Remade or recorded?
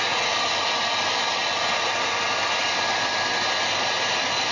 recorded